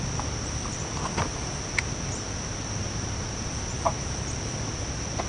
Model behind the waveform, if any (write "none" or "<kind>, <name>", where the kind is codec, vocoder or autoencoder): none